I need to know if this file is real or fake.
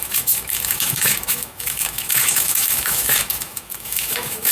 fake